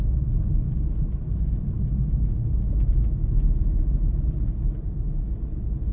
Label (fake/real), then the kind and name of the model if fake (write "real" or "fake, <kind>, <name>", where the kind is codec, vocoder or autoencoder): real